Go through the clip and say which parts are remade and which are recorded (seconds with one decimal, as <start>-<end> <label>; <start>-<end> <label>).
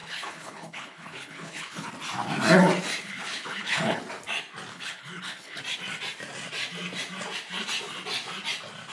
0.0-1.9 remade; 1.9-3.0 recorded; 3.0-4.0 remade; 4.0-4.7 recorded; 4.7-5.6 remade; 5.6-8.9 recorded